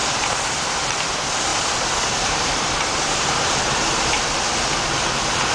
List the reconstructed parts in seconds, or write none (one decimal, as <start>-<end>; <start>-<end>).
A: 0.0-0.8; 1.5-4.8